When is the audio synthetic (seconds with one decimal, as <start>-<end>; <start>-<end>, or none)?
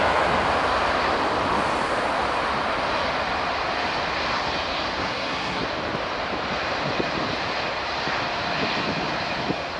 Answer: 5.0-5.6